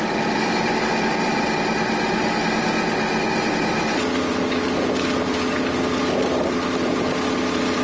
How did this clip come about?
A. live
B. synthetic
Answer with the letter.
A